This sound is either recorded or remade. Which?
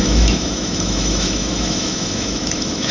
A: remade